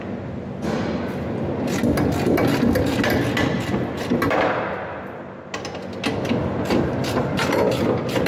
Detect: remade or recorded recorded